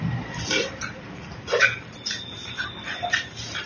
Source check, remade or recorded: remade